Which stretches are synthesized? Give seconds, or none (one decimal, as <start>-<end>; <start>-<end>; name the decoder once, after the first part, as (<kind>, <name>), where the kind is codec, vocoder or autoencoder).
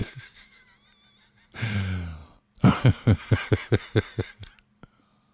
0.0-0.6 (codec, DAC)